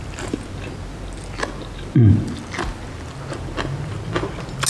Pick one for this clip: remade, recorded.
recorded